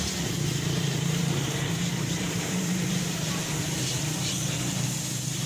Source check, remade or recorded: remade